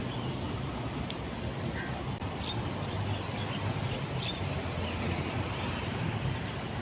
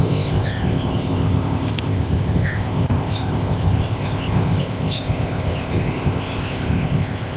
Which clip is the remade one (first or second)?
second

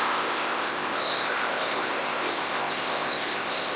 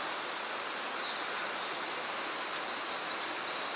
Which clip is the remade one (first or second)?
first